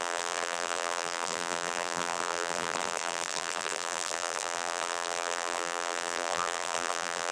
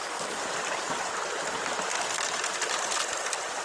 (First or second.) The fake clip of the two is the first